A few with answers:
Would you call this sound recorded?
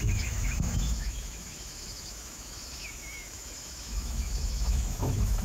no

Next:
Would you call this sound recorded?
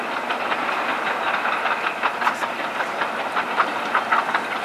yes